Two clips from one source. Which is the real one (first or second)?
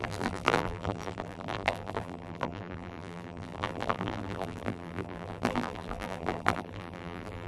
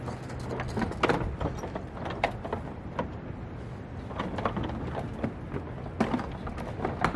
second